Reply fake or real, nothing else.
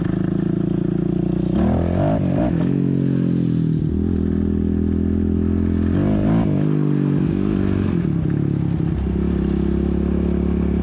real